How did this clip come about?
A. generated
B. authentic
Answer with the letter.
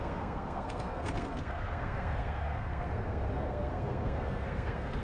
A